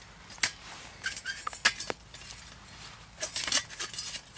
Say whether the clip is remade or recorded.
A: recorded